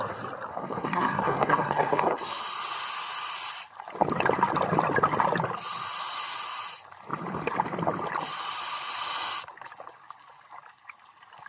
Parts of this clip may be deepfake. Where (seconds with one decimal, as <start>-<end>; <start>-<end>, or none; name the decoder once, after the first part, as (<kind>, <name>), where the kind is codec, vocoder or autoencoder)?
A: 0.5-2.4 (codec, SNAC)